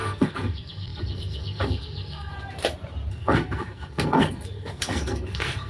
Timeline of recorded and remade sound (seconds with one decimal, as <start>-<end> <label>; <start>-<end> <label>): 0.0-2.3 remade; 2.3-3.1 recorded; 3.1-5.7 remade